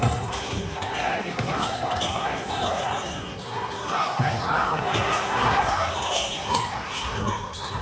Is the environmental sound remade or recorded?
remade